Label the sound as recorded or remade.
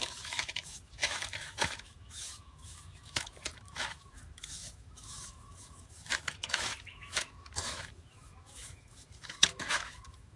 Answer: remade